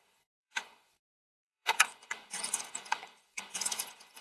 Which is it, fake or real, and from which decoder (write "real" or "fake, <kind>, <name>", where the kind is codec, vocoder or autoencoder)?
fake, vocoder, Vocos